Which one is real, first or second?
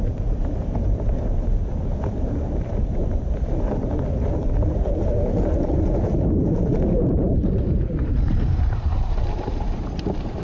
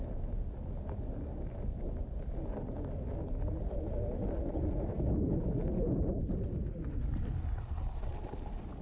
second